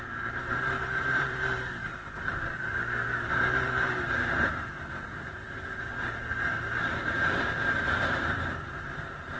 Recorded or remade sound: remade